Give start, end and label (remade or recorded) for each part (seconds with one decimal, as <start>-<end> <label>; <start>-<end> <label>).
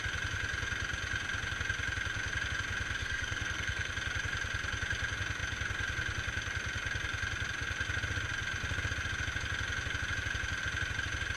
0.0-3.0 recorded; 3.0-3.9 remade; 3.9-11.4 recorded